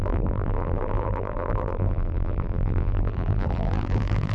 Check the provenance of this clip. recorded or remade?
remade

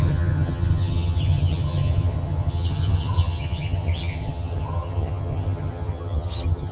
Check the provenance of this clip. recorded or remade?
remade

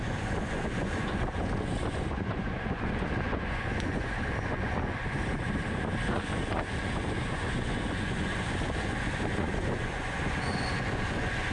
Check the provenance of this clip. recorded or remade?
remade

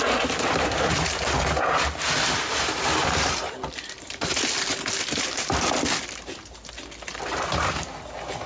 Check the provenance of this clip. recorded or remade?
recorded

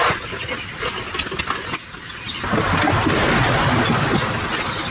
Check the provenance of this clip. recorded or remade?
recorded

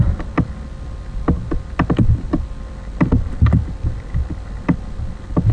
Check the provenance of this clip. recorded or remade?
recorded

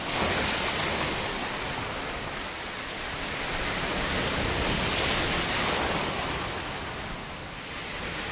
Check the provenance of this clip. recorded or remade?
recorded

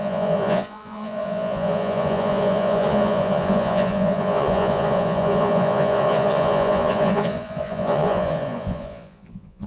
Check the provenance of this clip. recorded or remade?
remade